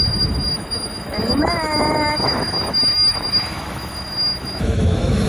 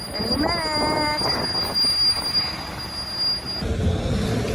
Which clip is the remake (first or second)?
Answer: first